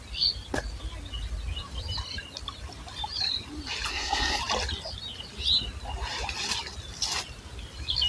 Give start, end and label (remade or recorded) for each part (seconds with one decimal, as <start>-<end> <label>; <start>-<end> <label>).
0.0-3.9 recorded; 3.9-4.4 remade; 4.4-8.1 recorded